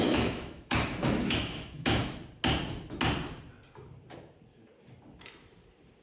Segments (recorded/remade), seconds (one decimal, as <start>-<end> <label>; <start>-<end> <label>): 0.0-2.2 remade; 2.2-6.0 recorded